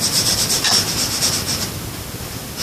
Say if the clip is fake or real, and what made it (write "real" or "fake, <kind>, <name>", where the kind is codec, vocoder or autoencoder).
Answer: real